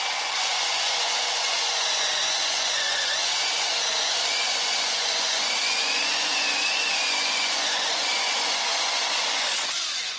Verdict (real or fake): fake